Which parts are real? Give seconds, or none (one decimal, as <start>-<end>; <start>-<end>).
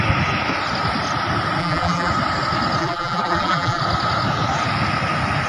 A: 0.0-1.6; 2.1-2.8; 3.8-5.5